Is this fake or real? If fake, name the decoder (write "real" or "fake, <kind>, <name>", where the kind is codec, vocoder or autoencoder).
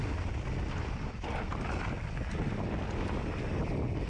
real